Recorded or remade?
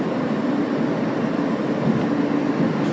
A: recorded